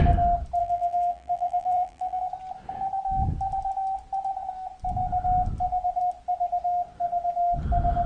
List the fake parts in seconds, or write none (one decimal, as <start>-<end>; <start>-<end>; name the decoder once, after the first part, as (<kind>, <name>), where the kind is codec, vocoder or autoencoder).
0.6-2.2 (vocoder, BigVGAN v2)